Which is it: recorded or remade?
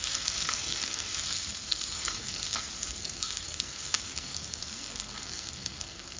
remade